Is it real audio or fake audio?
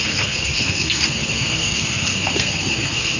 fake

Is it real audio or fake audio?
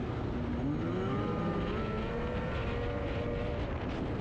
real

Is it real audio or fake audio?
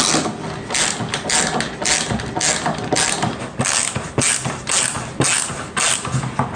real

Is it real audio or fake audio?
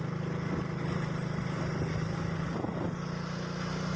real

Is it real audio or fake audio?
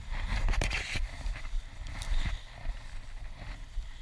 real